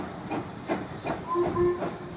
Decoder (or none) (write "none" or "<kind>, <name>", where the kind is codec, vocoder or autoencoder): none